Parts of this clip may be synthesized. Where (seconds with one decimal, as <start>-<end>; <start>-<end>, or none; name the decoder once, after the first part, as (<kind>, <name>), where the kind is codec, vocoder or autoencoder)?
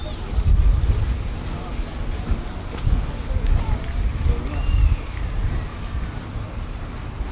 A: none